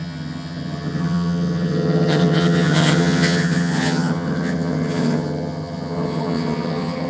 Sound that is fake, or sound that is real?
fake